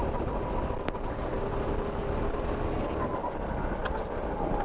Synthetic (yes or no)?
no